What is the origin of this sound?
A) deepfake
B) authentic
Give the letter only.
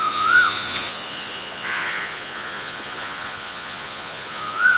A